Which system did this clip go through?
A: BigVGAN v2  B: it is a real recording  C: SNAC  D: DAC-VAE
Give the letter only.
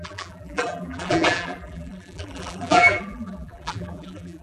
A